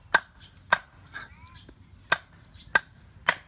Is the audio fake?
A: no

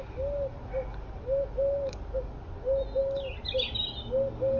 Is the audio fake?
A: no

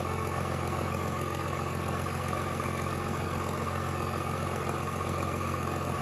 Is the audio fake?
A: yes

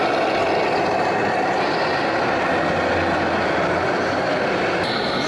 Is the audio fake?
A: no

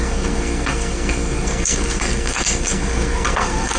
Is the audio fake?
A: yes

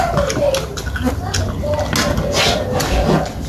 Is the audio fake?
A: no